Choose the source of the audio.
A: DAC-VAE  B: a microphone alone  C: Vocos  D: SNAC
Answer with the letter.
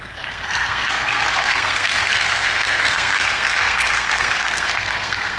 D